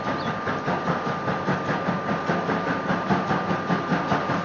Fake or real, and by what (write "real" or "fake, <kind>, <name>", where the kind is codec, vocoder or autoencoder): real